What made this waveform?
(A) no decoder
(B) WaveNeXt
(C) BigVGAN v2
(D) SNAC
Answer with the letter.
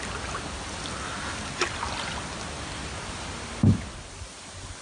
A